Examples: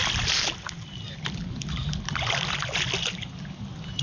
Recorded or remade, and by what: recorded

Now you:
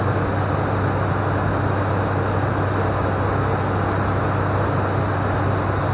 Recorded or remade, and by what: recorded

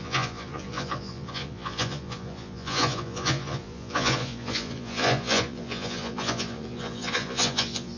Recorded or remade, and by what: remade, vocoder, Vocos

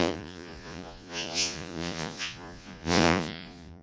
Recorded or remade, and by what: remade, vocoder, Vocos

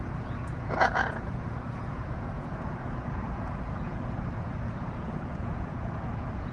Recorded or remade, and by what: remade, vocoder, Vocos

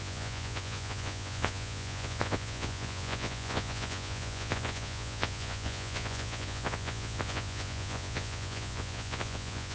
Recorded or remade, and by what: remade, vocoder, Vocos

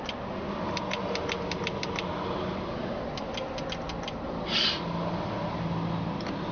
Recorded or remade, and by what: recorded